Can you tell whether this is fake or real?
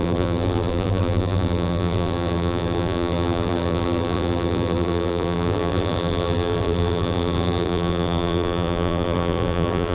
fake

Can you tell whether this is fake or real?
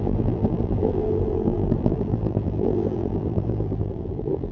fake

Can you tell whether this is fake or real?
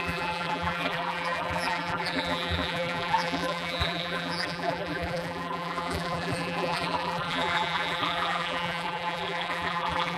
fake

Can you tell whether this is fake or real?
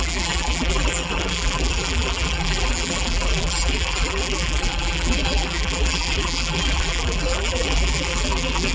fake